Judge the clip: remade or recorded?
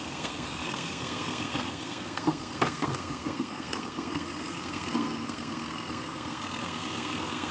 remade